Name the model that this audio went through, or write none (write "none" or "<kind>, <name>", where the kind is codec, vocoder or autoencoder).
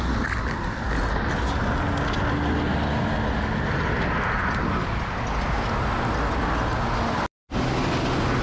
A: none